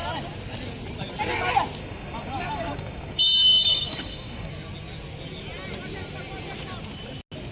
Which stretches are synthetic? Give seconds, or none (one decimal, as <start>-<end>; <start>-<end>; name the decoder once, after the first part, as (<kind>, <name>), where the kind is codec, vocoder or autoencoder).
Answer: 1.8-4.5 (codec, DAC)